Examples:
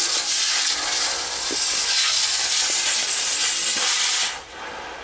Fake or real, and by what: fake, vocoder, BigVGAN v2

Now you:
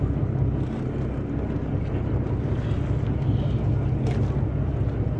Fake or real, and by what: real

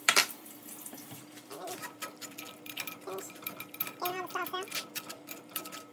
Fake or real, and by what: fake, vocoder, BigVGAN v2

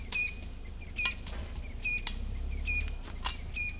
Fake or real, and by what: real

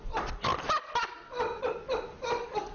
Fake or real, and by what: real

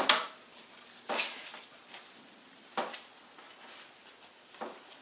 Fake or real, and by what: real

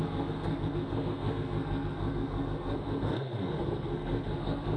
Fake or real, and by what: fake, codec, SNAC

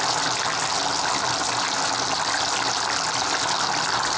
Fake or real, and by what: real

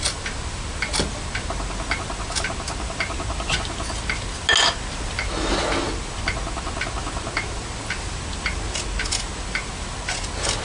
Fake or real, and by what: real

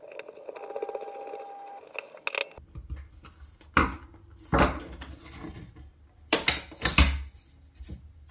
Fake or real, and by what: real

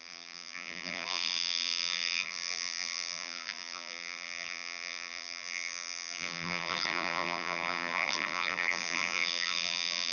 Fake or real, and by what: fake, vocoder, BigVGAN v2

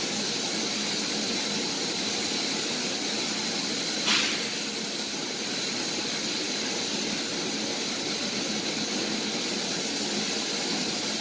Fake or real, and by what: real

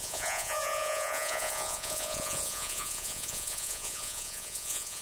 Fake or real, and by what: fake, vocoder, Vocos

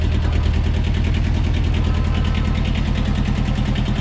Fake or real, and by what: real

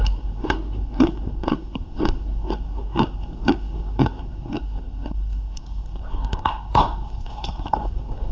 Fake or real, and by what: fake, codec, SNAC